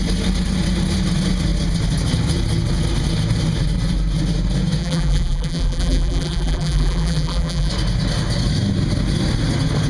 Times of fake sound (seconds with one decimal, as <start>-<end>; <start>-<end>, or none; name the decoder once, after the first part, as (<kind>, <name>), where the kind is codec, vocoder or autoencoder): 4.8-7.7 (vocoder, BigVGAN v2)